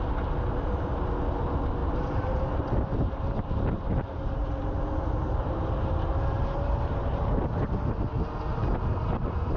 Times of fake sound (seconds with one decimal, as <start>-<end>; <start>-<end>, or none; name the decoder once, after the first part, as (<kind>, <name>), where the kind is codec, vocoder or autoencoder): 1.8-2.4 (vocoder, BigVGAN v2); 4.6-7.3